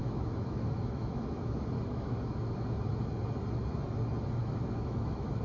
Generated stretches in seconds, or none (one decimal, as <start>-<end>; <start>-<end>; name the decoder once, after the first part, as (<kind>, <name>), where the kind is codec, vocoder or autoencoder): 0.0-2.9 (autoencoder, DAC-VAE); 4.4-5.4